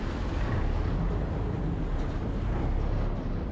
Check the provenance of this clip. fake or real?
real